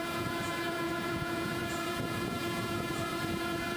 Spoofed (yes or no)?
yes